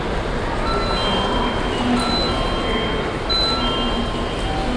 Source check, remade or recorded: recorded